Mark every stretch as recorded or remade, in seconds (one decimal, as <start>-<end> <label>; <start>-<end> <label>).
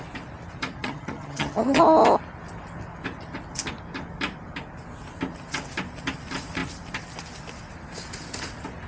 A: 0.0-0.8 recorded; 0.8-1.8 remade; 1.8-8.9 recorded